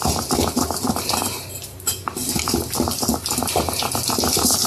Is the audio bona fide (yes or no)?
yes